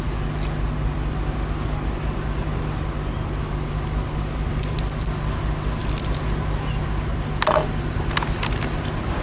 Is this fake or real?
real